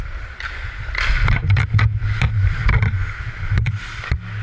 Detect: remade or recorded recorded